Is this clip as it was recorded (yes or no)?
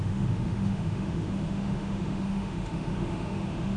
no